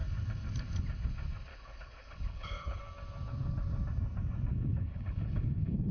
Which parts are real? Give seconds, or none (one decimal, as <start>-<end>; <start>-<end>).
0.0-1.5; 2.8-4.5